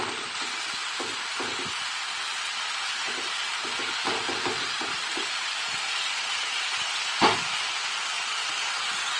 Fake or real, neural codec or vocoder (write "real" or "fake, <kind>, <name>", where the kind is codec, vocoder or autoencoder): real